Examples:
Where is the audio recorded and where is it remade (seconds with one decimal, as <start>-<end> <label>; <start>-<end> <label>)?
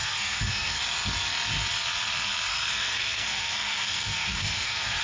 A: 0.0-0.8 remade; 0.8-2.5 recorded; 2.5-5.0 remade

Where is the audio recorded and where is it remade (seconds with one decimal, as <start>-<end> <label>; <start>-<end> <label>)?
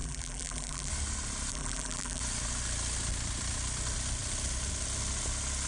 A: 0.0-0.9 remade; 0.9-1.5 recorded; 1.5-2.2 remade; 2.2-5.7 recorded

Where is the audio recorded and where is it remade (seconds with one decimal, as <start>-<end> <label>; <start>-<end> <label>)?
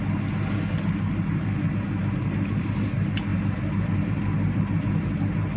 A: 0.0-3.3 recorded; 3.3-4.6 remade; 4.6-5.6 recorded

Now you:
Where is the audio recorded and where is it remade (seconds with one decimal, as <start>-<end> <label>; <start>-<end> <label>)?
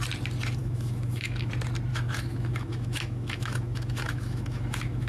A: 0.0-0.6 recorded; 0.6-1.5 remade; 1.5-1.9 recorded; 1.9-5.1 remade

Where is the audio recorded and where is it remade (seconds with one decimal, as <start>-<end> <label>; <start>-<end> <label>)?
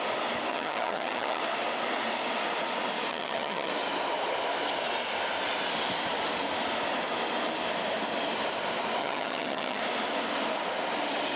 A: 0.0-0.5 recorded; 0.5-1.4 remade; 1.4-3.1 recorded; 3.1-3.7 remade; 3.7-9.0 recorded; 9.0-9.8 remade; 9.8-11.4 recorded